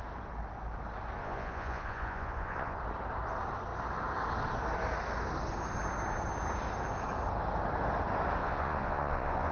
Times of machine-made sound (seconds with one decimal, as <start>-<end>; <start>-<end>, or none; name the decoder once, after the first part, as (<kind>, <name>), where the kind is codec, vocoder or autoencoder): 1.2-2.8 (vocoder, Vocos); 8.4-9.5